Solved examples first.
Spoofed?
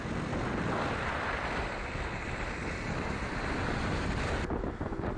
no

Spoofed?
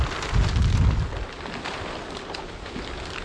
no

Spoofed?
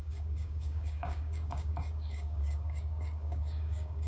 yes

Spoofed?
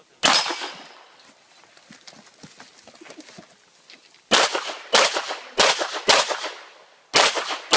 no